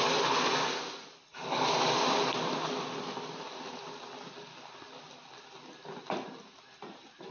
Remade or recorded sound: recorded